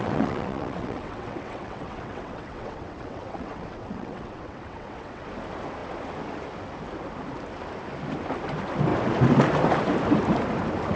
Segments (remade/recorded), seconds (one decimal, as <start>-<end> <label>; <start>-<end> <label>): 0.0-5.3 remade; 5.3-11.0 recorded